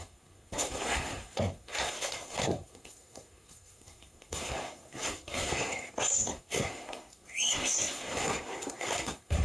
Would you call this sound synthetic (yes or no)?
yes